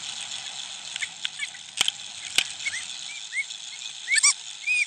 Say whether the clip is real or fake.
real